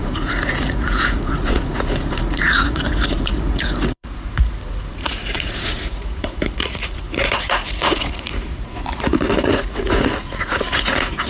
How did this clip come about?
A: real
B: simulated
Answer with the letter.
B